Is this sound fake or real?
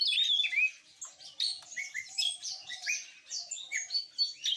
real